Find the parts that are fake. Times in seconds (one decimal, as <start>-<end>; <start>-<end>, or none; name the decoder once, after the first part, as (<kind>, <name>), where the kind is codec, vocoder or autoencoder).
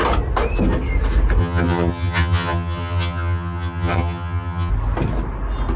1.4-4.7 (vocoder, HiFi-GAN)